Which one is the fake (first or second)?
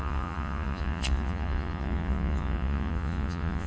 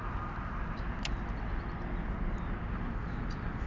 first